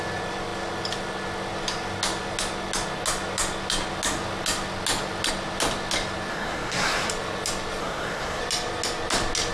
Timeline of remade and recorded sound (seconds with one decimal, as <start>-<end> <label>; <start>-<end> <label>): 0.0-6.3 recorded; 6.3-7.1 remade; 7.1-7.8 recorded; 7.8-8.4 remade; 8.4-9.5 recorded